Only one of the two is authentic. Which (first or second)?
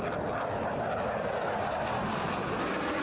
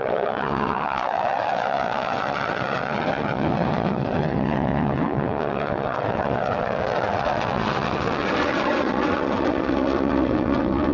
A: first